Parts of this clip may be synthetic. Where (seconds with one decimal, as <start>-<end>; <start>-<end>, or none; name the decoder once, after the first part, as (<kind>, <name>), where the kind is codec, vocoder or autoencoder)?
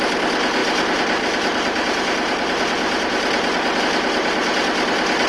none